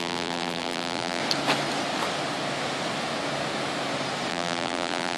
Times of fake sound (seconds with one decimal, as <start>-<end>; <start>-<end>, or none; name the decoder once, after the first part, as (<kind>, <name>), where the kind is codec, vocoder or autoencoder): 0.0-1.2 (vocoder, BigVGAN v2); 4.3-5.2